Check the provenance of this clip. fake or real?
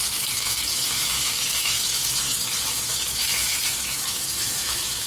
fake